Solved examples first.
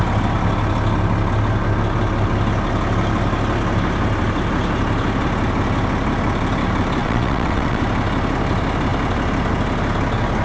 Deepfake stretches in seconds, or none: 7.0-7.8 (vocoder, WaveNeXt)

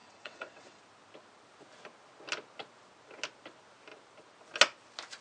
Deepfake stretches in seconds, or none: 0.0-0.8 (vocoder, WaveNeXt)

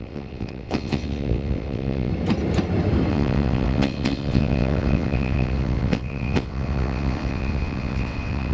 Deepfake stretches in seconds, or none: 0.0-2.1 (vocoder, WaveNeXt); 3.1-8.5